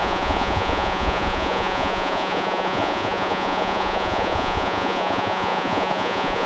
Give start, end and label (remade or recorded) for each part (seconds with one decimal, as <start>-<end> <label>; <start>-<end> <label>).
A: 0.0-6.5 remade